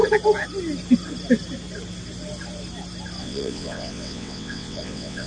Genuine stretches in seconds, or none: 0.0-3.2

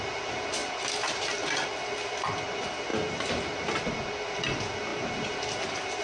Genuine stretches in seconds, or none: 0.0-6.0

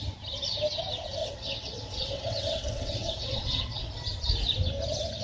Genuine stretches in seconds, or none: 0.0-1.2; 3.9-5.2

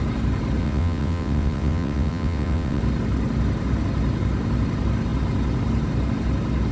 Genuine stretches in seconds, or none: 0.0-0.6; 2.8-6.7

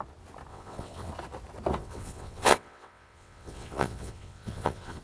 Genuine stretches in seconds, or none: 0.0-0.5; 1.1-1.8

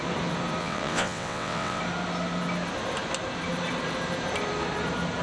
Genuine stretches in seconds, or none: 0.0-0.6; 1.8-5.2